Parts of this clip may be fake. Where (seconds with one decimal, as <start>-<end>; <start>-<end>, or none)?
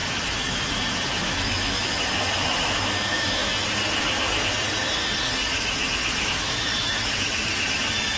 0.0-3.5; 5.4-8.2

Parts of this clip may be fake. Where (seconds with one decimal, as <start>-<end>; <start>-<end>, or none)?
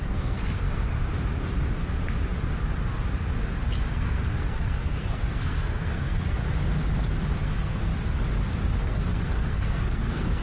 0.0-0.9; 3.9-6.4; 7.4-7.9; 8.8-10.4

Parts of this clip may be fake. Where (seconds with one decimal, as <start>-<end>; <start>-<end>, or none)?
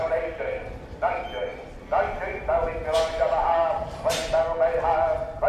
none